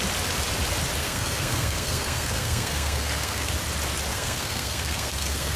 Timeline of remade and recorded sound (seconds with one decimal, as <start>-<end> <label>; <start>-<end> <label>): 0.0-1.0 recorded; 1.0-3.5 remade; 3.5-4.1 recorded; 4.1-5.6 remade